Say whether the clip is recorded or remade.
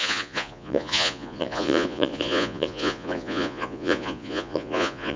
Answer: remade